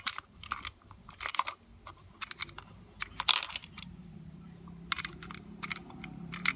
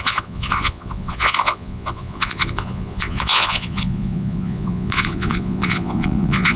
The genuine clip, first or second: first